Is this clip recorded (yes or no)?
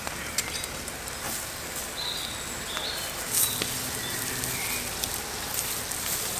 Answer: yes